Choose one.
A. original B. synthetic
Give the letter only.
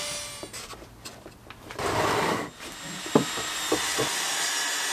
A